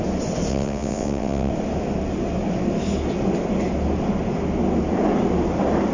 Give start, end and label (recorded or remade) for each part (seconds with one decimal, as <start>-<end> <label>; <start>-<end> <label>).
0.0-0.5 recorded; 0.5-1.5 remade; 1.5-5.9 recorded